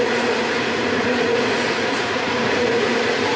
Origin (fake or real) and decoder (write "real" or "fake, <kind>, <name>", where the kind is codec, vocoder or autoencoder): fake, vocoder, Vocos